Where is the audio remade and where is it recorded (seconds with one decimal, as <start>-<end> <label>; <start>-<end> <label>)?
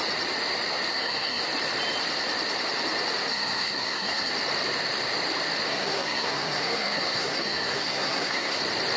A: 0.0-0.9 recorded; 0.9-1.4 remade; 1.4-3.3 recorded; 3.3-4.3 remade; 4.3-5.7 recorded; 5.7-8.6 remade; 8.6-9.0 recorded